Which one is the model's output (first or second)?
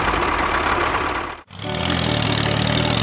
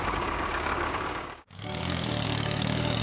second